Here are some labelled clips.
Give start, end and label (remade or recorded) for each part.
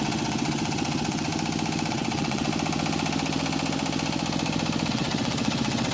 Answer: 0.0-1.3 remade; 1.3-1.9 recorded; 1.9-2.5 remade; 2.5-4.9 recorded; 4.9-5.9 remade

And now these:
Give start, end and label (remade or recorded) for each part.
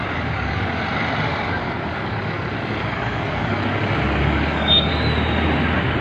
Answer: 0.0-0.8 remade; 0.8-1.6 recorded; 1.6-4.9 remade; 4.9-6.0 recorded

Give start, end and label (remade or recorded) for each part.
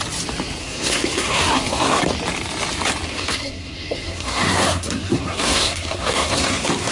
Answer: 0.0-0.6 recorded; 0.6-2.0 remade; 2.0-3.1 recorded; 3.1-6.9 remade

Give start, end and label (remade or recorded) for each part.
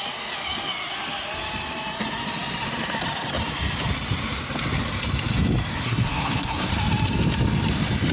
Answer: 0.0-5.7 recorded; 5.7-6.7 remade; 6.7-8.1 recorded